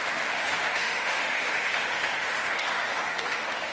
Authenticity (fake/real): fake